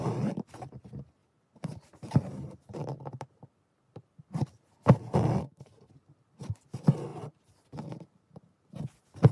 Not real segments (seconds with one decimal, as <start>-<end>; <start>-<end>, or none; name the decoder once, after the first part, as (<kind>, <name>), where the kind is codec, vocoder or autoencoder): 5.4-5.9 (codec, SNAC)